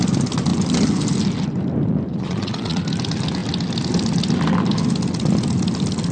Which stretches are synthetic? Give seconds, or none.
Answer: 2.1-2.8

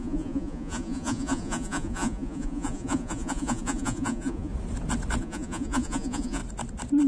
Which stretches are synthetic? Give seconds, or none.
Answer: 0.0-4.5; 5.2-6.4

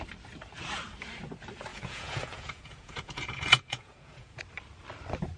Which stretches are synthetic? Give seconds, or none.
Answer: 1.7-4.4

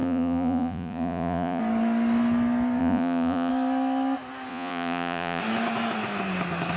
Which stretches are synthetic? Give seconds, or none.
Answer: 0.0-1.6; 2.8-3.5; 4.5-5.4

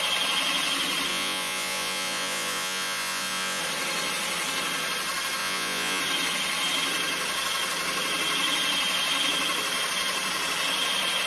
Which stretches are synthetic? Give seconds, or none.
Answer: 1.1-3.6; 5.4-6.0

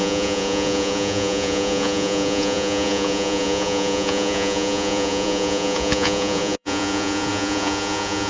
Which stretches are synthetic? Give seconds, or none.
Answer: 0.0-8.3

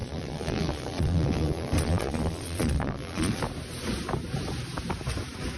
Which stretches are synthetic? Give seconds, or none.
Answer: 0.0-3.4